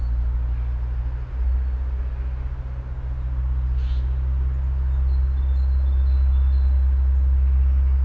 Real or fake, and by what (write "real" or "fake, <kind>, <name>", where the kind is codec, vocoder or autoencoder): real